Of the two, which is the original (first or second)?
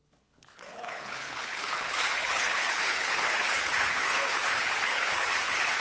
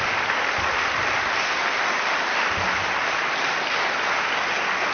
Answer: second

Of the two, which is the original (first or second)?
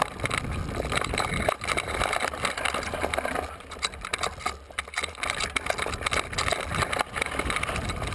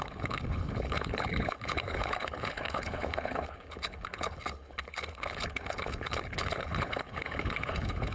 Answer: first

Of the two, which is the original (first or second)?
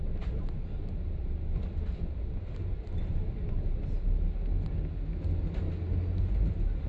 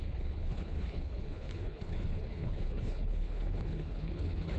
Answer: first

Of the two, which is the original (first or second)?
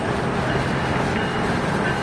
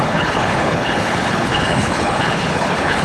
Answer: first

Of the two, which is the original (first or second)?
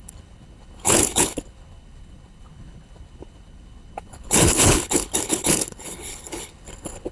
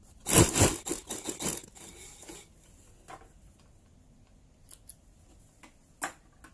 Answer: second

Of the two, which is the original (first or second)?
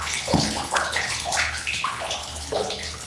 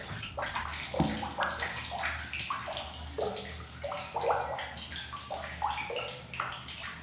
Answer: second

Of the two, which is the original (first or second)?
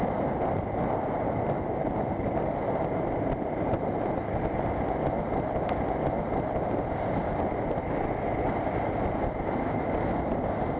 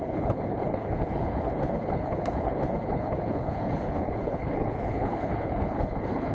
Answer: first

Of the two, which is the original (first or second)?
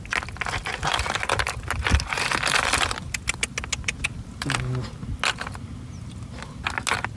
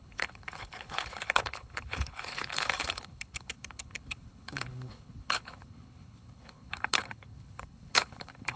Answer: first